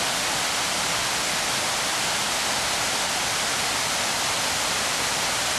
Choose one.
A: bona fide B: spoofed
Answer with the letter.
A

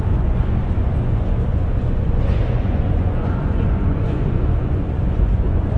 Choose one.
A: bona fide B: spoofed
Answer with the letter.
B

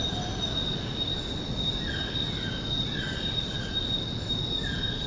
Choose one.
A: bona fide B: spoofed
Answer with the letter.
A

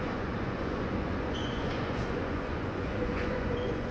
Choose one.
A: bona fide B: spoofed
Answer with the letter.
B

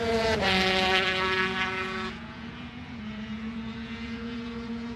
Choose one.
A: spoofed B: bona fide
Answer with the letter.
A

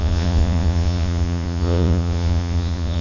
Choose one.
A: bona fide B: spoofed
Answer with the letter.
B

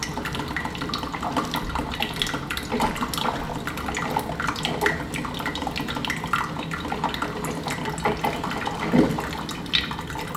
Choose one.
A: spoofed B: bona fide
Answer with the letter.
B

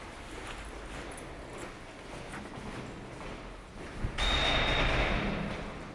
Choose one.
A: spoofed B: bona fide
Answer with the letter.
B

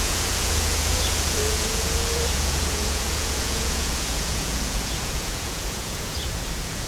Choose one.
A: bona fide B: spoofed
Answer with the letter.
B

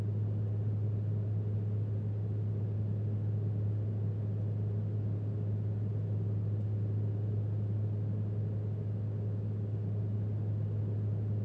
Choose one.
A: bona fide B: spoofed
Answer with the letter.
A